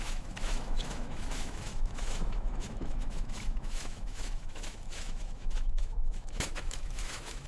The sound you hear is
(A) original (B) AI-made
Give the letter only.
B